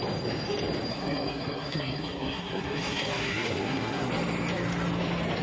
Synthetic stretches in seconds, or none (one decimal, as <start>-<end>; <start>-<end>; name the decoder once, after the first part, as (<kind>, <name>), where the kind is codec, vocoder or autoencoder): 0.9-4.1 (codec, SNAC)